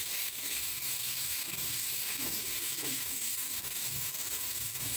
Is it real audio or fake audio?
fake